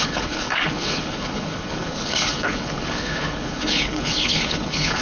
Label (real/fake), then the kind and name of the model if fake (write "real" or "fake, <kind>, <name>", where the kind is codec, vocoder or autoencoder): fake, codec, HILCodec